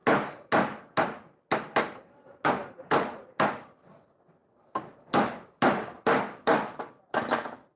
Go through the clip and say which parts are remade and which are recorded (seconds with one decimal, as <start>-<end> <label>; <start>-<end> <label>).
0.0-7.8 recorded